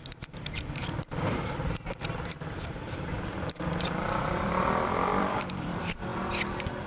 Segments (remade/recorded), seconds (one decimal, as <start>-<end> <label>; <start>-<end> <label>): 0.0-6.1 remade; 6.1-6.9 recorded